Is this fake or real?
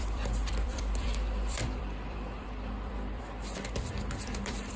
fake